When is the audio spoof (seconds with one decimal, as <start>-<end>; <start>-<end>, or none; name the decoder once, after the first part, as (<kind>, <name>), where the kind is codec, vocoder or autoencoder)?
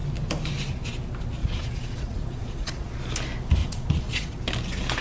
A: 1.4-3.0 (vocoder, Vocos); 3.6-4.4